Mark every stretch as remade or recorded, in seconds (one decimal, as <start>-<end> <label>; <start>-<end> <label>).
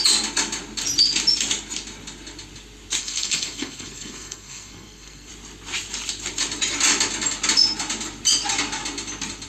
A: 0.0-3.0 recorded; 3.0-5.3 remade; 5.3-9.5 recorded